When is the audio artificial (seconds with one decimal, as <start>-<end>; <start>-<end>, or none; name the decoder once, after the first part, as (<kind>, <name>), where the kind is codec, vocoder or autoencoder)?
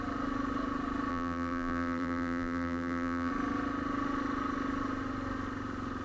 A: 1.1-3.3 (vocoder, BigVGAN v2)